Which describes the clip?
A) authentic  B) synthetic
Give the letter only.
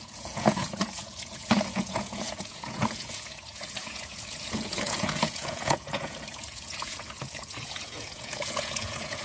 B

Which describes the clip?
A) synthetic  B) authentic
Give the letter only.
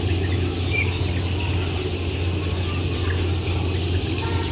B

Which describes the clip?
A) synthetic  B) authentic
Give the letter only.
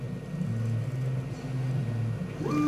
B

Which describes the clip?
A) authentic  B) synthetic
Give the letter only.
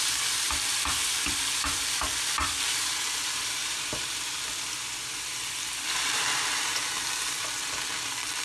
B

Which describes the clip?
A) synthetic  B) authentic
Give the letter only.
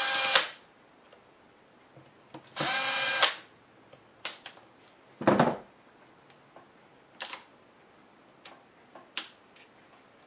B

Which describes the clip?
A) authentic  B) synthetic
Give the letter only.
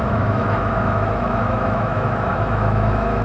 B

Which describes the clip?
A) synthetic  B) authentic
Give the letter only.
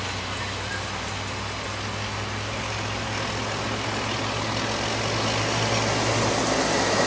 B